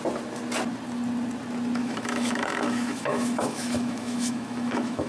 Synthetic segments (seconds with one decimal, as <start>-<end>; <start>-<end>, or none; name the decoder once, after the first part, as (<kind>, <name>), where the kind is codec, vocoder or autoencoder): 1.8-5.1 (autoencoder, DAC-VAE)